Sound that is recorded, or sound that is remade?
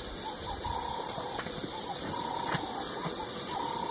recorded